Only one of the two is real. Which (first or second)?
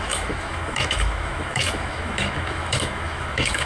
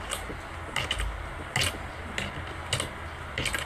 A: second